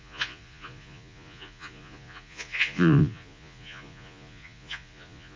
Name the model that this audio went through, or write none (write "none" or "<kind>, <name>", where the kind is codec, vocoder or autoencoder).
vocoder, Vocos